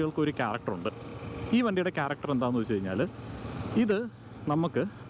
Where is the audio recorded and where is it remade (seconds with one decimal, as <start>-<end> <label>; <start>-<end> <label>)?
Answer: 0.0-5.1 recorded